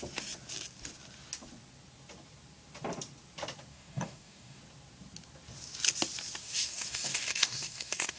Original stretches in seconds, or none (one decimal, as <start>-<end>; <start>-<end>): 0.0-3.7; 4.6-6.4

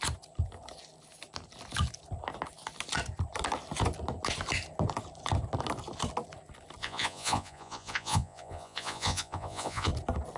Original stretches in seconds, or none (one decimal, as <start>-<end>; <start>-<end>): 0.0-6.8; 9.9-10.4

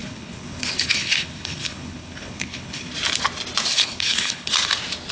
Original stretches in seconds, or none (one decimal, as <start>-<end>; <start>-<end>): 2.9-3.7; 4.5-5.1

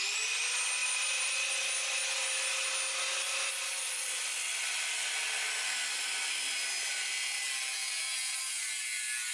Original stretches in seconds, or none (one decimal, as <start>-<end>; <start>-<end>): 0.0-9.3

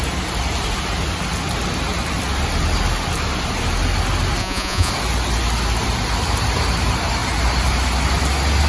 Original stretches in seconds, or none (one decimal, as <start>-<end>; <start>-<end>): 0.0-4.4; 4.9-8.7

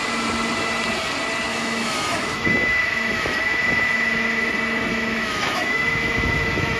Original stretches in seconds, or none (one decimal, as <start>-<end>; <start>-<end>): 0.0-1.5; 4.5-4.9